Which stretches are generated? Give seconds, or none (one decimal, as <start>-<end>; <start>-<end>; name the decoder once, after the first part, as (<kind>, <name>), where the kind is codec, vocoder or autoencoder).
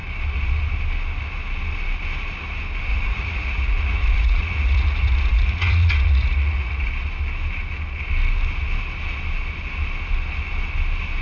2.9-6.9 (vocoder, Vocos)